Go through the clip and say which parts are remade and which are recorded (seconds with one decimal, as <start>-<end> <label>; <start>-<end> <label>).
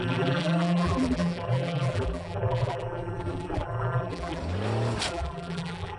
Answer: 0.0-4.4 remade; 4.4-5.1 recorded; 5.1-6.0 remade